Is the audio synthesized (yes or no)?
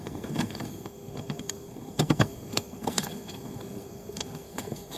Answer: yes